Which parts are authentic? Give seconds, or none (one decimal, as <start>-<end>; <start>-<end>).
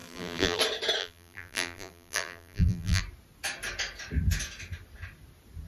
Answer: 0.6-1.0; 3.0-5.7